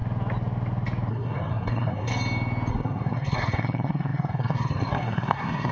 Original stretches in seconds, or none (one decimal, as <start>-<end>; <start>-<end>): 0.0-1.1; 2.1-2.7

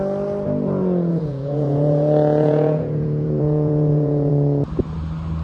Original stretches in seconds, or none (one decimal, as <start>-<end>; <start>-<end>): 0.0-1.1; 4.3-5.4

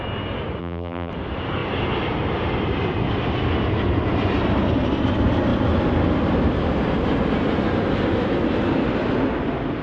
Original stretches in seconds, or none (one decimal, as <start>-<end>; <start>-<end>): 0.0-0.6; 1.1-9.8